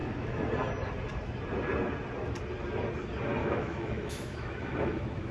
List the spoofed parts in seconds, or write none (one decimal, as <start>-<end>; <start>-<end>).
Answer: 0.0-0.5; 3.4-5.3